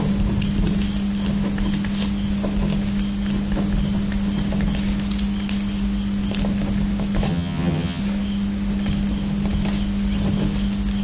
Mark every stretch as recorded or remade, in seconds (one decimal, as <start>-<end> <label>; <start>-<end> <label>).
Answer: 0.0-7.3 recorded; 7.3-8.0 remade; 8.0-11.0 recorded